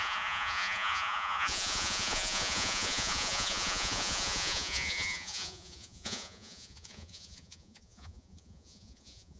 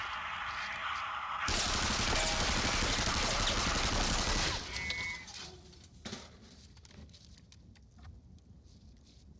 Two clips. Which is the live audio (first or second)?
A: second